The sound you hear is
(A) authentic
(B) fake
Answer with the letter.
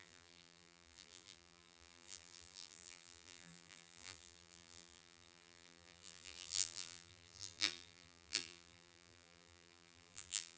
B